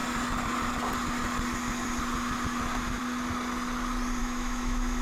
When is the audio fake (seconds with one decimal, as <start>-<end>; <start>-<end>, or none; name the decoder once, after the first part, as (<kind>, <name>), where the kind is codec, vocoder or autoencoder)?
4.2-5.0 (autoencoder, DAC-VAE)